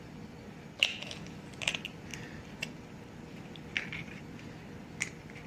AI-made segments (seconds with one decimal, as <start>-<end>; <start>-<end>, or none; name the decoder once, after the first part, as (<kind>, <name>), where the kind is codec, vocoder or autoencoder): none